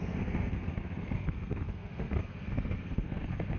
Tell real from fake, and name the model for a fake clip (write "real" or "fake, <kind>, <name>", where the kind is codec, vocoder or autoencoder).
fake, codec, SNAC